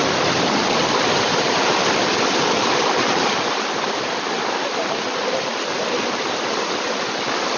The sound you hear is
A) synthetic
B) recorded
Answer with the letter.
B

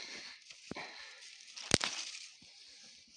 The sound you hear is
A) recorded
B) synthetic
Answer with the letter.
A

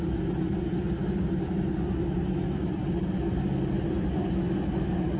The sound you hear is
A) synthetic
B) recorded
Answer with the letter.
B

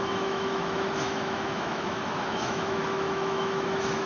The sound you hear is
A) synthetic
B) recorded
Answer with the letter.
A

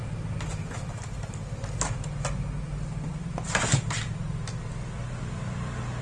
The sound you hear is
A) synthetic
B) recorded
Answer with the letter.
B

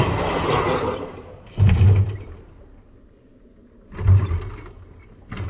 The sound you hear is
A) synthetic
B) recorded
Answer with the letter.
B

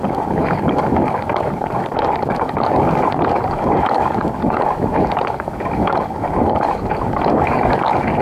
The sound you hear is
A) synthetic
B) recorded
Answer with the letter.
A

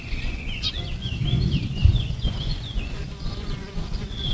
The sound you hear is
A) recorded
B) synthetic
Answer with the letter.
B